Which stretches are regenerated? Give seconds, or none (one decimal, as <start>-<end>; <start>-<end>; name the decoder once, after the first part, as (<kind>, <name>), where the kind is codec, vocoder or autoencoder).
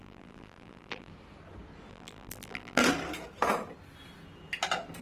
0.0-1.1 (vocoder, BigVGAN v2); 1.9-2.8